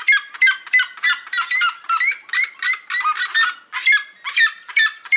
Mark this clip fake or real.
real